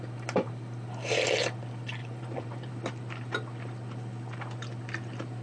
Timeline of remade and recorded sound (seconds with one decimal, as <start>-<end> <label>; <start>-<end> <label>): 0.0-2.0 recorded; 2.0-2.7 remade; 2.7-5.4 recorded